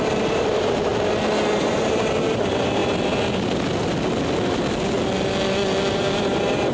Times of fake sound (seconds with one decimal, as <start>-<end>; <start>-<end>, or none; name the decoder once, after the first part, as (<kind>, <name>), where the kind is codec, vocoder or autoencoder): 0.0-0.9 (vocoder, BigVGAN v2); 1.6-2.8; 5.9-6.7